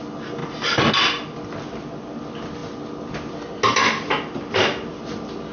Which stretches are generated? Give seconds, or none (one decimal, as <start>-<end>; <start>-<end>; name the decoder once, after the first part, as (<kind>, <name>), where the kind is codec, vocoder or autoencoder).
none